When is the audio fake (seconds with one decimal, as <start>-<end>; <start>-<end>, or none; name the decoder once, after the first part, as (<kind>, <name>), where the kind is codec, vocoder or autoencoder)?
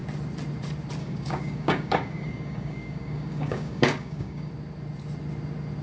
1.0-4.5 (codec, DAC)